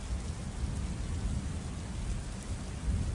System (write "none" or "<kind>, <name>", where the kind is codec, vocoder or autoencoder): none